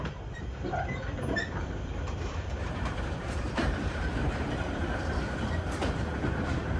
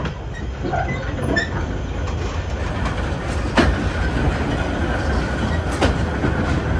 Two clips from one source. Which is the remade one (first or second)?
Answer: first